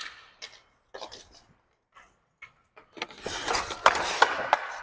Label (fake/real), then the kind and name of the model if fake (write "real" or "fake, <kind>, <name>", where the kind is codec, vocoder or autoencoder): real